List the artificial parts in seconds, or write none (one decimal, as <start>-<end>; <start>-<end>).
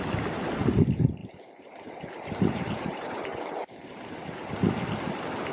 1.2-4.5